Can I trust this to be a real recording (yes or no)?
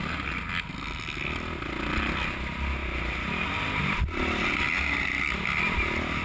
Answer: yes